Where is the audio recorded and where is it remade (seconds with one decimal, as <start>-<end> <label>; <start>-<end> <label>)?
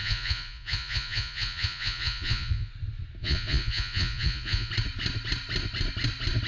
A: 0.0-2.7 remade; 2.7-3.2 recorded; 3.2-4.7 remade; 4.7-6.5 recorded